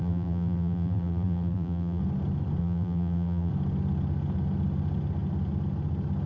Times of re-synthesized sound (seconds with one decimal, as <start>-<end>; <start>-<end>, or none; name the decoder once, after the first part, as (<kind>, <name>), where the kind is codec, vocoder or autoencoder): 0.0-2.0 (vocoder, BigVGAN v2); 2.6-3.5